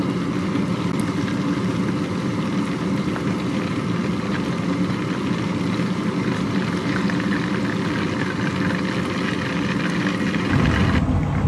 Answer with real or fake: real